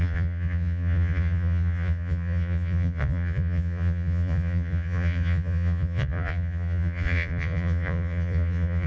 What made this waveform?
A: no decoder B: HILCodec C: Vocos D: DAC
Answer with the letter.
C